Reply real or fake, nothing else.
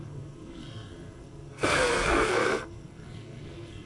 fake